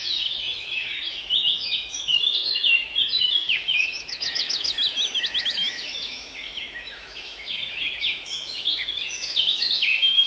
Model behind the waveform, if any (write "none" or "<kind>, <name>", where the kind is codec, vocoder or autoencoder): autoencoder, DAC-VAE